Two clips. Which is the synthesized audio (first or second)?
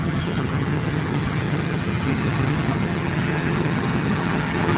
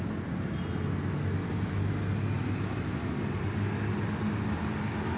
first